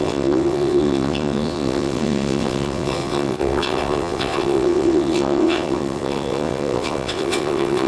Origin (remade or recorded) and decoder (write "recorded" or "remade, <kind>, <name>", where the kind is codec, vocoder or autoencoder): remade, vocoder, WaveNeXt